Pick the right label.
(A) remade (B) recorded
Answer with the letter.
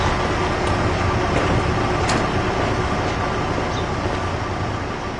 B